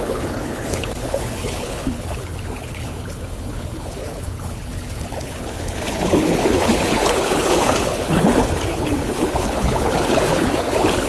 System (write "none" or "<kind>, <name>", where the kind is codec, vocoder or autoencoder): codec, HILCodec